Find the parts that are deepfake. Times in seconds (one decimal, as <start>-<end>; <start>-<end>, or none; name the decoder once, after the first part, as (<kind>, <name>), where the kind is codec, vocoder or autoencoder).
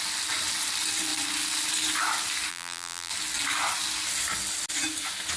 2.5-3.1 (vocoder, BigVGAN v2)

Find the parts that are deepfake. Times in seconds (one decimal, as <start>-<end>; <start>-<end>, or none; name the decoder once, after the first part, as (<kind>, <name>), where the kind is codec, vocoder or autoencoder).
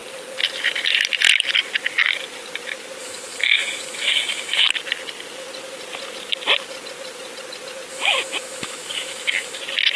3.0-4.7 (autoencoder, DAC-VAE); 7.9-9.6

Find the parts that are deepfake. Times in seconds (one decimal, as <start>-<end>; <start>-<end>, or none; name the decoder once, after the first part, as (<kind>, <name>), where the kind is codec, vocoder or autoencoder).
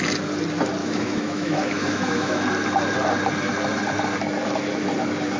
0.8-2.3 (autoencoder, DAC-VAE)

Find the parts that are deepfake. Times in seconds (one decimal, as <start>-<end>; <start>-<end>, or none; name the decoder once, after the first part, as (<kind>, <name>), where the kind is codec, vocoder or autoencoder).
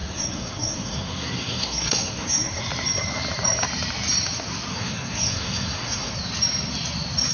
0.0-2.6 (codec, SNAC); 4.7-6.1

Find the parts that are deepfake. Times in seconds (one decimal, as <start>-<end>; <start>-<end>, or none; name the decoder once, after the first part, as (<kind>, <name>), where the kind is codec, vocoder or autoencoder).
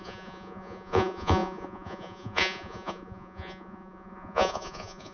0.0-5.1 (vocoder, Vocos)